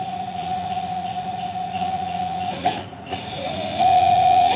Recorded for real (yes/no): no